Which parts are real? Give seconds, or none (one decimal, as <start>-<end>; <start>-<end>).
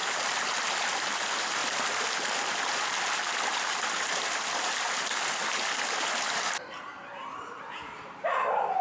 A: 0.0-0.8; 1.6-6.5